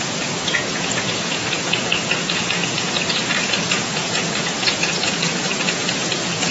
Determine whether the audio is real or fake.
fake